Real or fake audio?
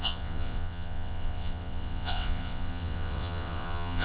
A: fake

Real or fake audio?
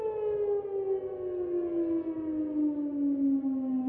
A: real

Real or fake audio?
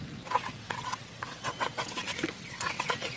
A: fake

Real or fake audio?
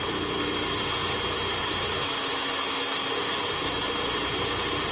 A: real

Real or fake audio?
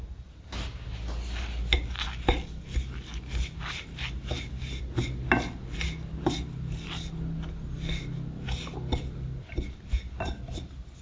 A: real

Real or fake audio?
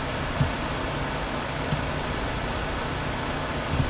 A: real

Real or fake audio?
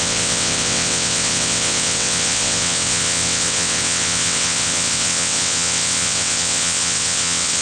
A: fake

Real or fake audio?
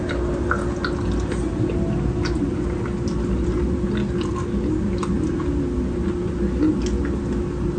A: real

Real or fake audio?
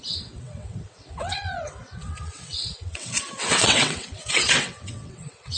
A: fake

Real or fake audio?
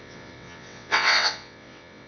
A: fake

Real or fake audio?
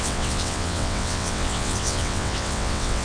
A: fake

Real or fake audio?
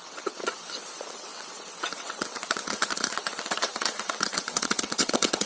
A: fake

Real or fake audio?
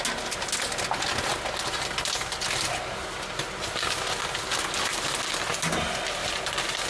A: real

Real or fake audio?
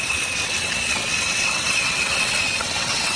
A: fake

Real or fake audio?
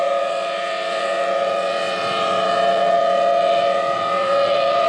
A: fake